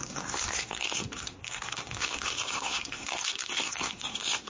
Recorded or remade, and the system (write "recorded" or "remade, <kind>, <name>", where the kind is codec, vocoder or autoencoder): remade, codec, SNAC